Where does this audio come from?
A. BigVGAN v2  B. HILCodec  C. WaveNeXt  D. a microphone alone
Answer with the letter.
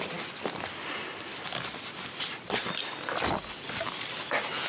D